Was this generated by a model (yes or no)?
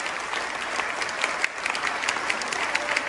no